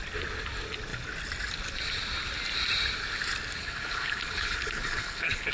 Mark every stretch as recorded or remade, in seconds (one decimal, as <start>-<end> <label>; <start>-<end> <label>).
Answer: 0.0-3.6 recorded; 3.6-5.5 remade